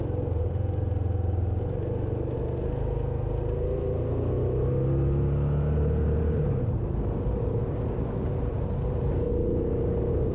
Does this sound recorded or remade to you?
recorded